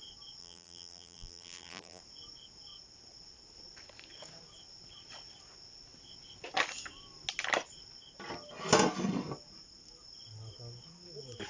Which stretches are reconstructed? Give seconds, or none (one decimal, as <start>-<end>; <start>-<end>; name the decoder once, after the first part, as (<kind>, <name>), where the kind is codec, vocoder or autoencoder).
0.4-2.0 (vocoder, BigVGAN v2)